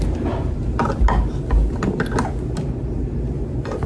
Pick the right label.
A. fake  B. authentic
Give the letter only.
B